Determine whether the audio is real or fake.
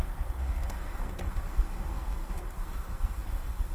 fake